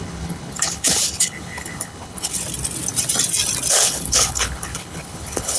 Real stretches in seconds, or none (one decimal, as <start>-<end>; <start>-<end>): 2.3-3.7